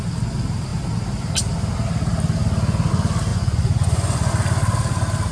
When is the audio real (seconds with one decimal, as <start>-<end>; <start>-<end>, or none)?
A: 0.0-3.3; 4.3-5.3